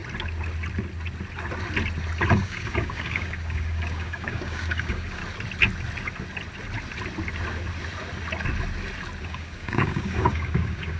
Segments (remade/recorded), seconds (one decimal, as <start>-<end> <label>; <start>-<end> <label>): 0.0-2.3 recorded; 2.3-5.2 remade; 5.2-9.2 recorded; 9.2-11.0 remade